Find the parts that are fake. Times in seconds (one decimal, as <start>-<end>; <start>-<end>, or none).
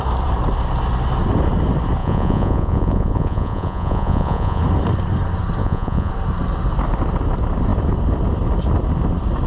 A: 2.0-4.6; 5.6-6.1